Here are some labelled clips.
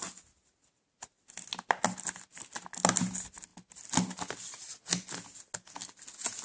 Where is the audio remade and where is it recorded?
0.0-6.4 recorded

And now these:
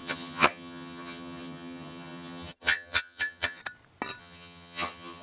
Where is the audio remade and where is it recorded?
0.0-3.6 remade; 3.6-4.2 recorded; 4.2-5.2 remade

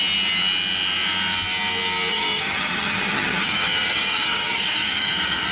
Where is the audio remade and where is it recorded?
0.0-2.1 recorded; 2.1-5.5 remade

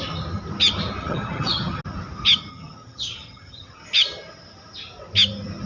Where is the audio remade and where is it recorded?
0.0-1.0 recorded; 1.0-1.8 remade; 1.8-2.5 recorded; 2.5-3.8 remade; 3.8-5.7 recorded

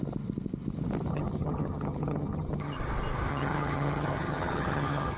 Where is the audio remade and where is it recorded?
0.0-1.1 recorded; 1.1-2.8 remade; 2.8-3.3 recorded; 3.3-5.2 remade

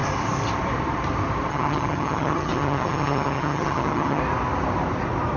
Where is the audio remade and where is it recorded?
0.0-1.5 recorded; 1.5-4.2 remade; 4.2-5.4 recorded

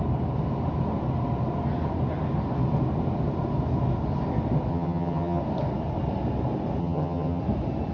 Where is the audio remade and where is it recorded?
0.0-4.7 recorded; 4.7-5.4 remade; 5.4-6.8 recorded; 6.8-7.4 remade; 7.4-7.9 recorded